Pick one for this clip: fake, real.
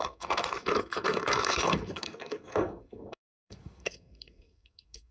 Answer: fake